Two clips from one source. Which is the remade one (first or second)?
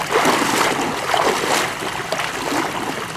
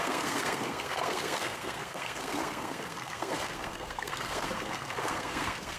second